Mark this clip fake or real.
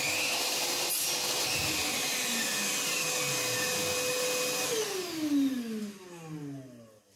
real